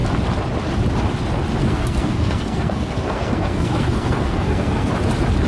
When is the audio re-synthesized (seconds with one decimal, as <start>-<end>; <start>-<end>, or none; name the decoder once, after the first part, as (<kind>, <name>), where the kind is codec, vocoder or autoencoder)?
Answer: 1.6-4.9 (codec, SNAC)